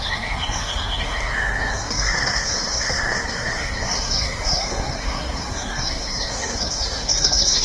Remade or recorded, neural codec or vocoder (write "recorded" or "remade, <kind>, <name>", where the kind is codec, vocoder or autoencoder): remade, codec, SNAC